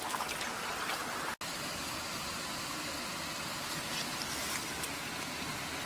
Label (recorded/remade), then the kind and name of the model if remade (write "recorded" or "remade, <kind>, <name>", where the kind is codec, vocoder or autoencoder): recorded